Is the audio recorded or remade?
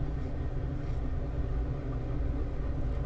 recorded